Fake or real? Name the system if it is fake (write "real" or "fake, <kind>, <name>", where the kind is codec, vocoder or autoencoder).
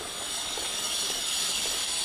fake, codec, DAC